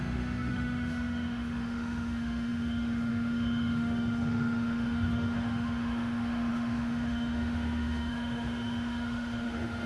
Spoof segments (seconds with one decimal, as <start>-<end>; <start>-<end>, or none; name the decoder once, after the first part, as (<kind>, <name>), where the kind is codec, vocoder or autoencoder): 0.0-9.9 (autoencoder, DAC-VAE)